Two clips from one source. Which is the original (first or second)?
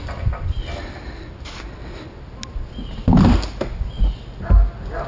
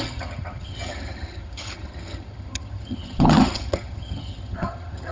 first